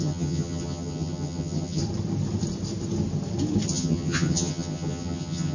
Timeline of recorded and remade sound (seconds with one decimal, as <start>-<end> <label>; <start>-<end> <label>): 0.0-1.8 remade; 1.8-3.7 recorded; 3.7-5.5 remade